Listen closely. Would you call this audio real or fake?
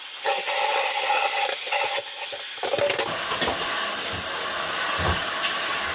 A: real